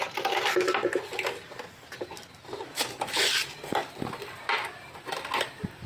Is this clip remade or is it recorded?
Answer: recorded